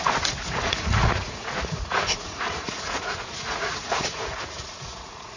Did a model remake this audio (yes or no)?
yes